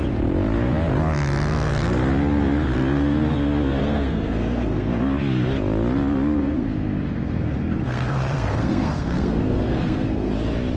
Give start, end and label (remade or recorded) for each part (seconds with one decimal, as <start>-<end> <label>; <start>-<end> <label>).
0.0-3.8 recorded; 3.8-5.0 remade; 5.0-6.4 recorded; 6.4-10.3 remade; 10.3-10.8 recorded

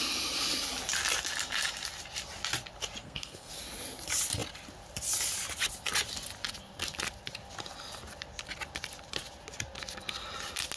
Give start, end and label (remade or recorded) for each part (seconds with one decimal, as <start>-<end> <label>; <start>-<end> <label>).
0.0-3.0 recorded; 3.0-3.5 remade; 3.5-10.8 recorded

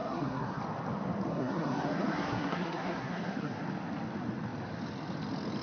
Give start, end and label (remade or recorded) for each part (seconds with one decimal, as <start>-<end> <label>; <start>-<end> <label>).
0.0-0.6 remade; 0.6-1.3 recorded; 1.3-3.6 remade; 3.6-5.6 recorded

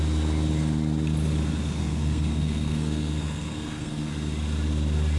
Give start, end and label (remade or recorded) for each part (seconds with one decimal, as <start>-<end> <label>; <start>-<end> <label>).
0.0-1.8 recorded; 1.8-4.1 remade; 4.1-5.2 recorded

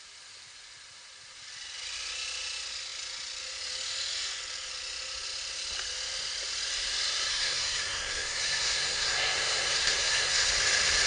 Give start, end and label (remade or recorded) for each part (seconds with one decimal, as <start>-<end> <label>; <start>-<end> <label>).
0.0-7.3 recorded; 7.3-10.5 remade; 10.5-11.1 recorded

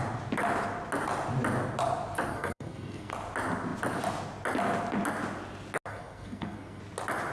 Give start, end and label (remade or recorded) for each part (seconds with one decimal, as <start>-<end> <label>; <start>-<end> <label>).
0.0-2.3 recorded; 2.3-3.1 remade; 3.1-5.9 recorded; 5.9-6.8 remade; 6.8-7.3 recorded